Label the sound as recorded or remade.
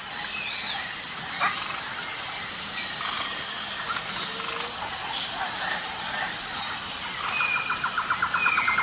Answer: recorded